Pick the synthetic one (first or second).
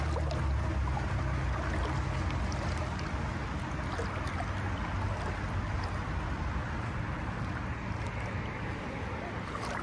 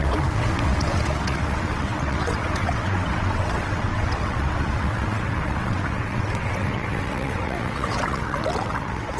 second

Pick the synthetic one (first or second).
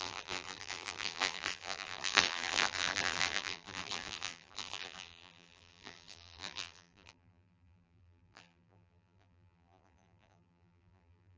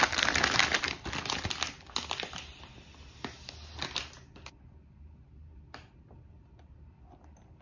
first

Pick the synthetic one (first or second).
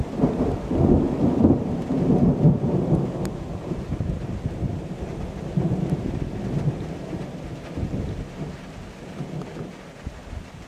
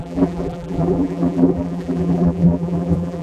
second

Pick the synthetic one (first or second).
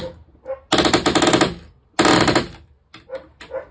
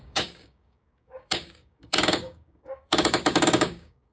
second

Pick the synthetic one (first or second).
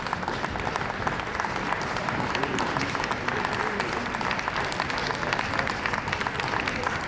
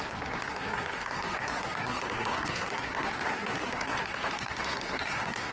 second